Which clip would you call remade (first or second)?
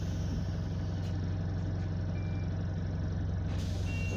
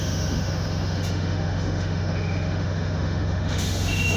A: second